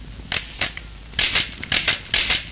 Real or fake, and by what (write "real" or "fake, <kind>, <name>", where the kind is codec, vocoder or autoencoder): real